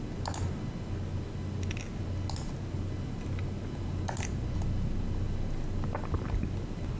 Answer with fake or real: real